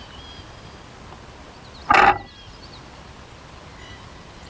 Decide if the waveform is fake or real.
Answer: real